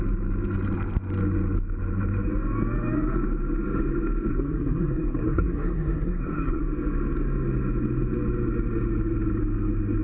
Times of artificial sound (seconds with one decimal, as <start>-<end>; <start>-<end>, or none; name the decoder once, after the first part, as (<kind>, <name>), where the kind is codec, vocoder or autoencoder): 4.3-6.6 (codec, SNAC)